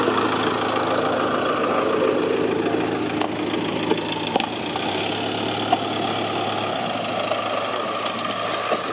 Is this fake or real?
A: real